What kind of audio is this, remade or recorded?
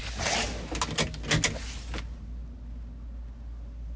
recorded